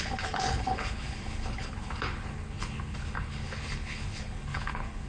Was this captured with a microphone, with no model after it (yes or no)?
no